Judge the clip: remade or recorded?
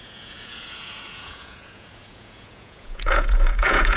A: remade